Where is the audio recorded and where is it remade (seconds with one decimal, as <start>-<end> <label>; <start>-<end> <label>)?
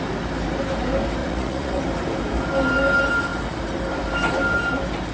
0.0-1.2 recorded; 1.2-1.8 remade; 1.8-5.1 recorded